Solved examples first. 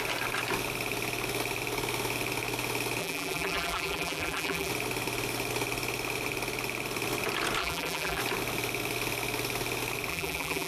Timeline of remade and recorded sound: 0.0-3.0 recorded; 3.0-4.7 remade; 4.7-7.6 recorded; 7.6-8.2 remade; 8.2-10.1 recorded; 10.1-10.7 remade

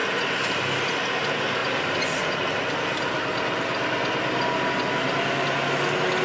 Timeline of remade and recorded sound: 0.0-6.2 recorded

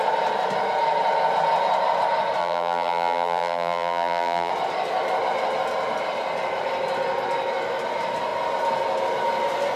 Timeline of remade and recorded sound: 0.0-2.4 recorded; 2.4-4.5 remade; 4.5-9.8 recorded

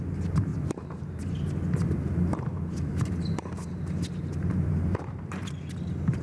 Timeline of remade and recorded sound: 0.0-0.5 recorded; 0.5-1.2 remade; 1.2-1.8 recorded; 1.8-5.5 remade; 5.5-6.2 recorded